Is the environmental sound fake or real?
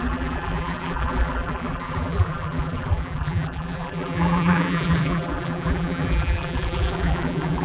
fake